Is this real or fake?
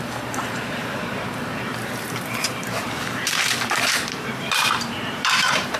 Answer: fake